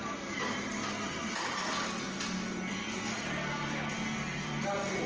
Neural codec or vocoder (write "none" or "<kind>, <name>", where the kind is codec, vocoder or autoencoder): none